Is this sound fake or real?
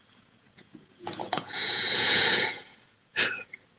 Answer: fake